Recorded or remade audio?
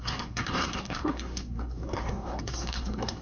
remade